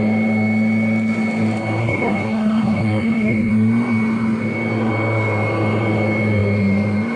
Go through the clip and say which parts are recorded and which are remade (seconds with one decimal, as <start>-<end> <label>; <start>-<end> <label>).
0.0-1.8 recorded; 1.8-3.5 remade; 3.5-7.2 recorded